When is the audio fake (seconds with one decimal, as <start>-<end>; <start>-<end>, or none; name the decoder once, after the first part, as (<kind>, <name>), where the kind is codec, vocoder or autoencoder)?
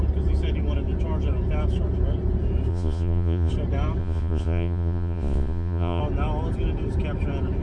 2.7-3.5 (vocoder, Vocos); 4.0-6.0